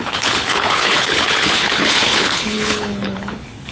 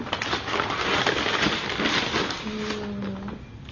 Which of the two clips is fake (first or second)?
first